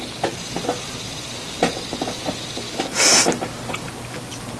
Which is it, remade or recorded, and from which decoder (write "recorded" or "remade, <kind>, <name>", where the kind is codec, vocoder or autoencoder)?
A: recorded